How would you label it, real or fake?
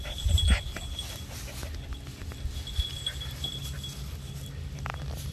real